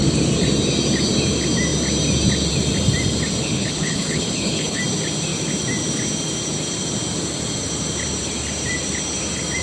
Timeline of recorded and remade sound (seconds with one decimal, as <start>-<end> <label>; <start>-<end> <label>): 0.0-3.4 recorded; 3.4-4.8 remade; 4.8-9.6 recorded